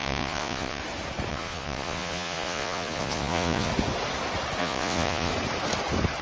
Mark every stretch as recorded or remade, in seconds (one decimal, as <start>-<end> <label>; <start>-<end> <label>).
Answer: 0.0-0.8 remade; 0.8-1.3 recorded; 1.3-3.7 remade; 3.7-4.6 recorded; 4.6-5.3 remade; 5.3-6.2 recorded